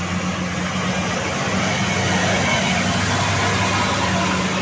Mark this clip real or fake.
real